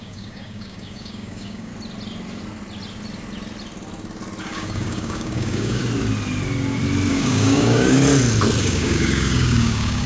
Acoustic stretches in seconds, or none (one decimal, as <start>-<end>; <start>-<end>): 1.7-4.4; 5.8-7.1; 8.0-8.6